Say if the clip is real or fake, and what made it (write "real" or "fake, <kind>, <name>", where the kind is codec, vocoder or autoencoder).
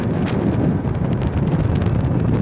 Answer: real